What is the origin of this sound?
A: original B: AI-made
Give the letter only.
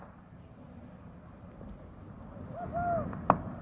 A